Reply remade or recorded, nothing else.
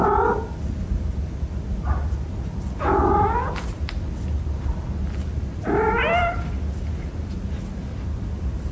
recorded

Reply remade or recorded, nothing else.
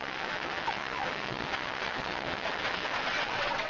remade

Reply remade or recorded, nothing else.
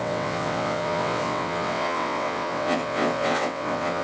remade